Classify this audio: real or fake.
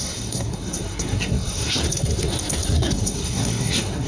fake